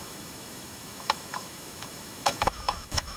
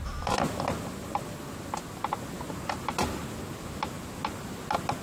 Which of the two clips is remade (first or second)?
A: first